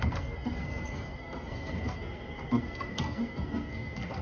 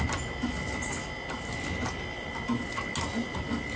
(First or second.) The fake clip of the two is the first